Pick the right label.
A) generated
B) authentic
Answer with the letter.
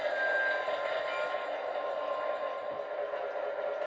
B